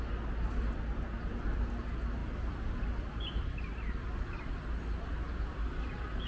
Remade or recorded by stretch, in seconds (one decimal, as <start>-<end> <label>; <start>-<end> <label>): 0.0-6.3 recorded